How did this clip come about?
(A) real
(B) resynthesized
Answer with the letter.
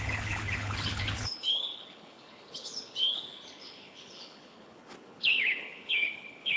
B